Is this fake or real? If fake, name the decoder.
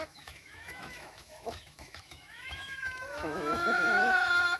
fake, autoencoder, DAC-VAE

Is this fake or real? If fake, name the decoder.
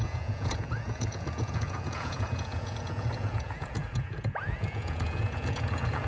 fake, vocoder, Vocos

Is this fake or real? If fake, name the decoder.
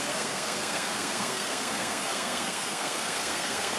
fake, codec, SNAC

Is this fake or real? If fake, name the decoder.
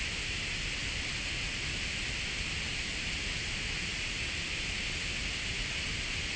real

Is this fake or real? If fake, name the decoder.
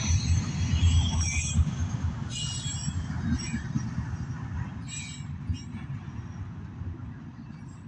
real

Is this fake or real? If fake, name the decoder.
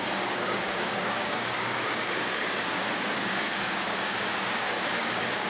fake, codec, DAC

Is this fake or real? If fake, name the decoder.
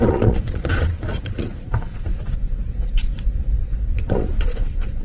fake, vocoder, Vocos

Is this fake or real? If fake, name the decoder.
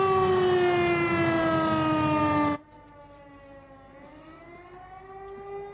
real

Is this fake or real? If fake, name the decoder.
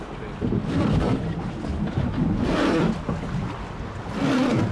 real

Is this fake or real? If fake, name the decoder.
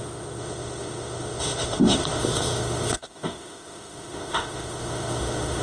fake, autoencoder, DAC-VAE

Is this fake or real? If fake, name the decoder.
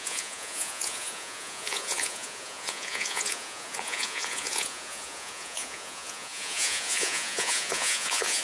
fake, vocoder, Vocos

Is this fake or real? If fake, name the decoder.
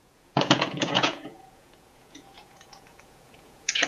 fake, vocoder, Vocos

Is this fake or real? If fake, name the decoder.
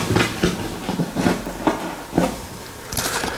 real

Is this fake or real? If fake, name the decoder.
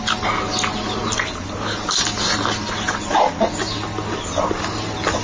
real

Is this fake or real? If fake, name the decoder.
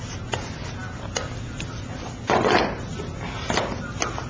real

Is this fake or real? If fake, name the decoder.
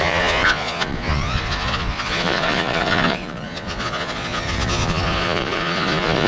fake, vocoder, Vocos